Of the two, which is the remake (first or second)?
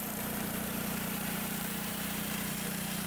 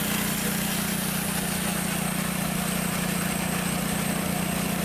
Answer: first